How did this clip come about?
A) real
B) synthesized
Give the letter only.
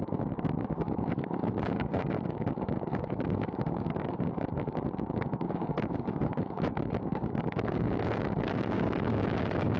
B